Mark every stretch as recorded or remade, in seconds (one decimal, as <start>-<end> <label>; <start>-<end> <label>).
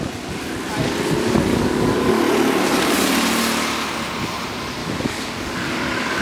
0.0-1.5 recorded; 1.5-2.2 remade; 2.2-4.8 recorded; 4.8-6.2 remade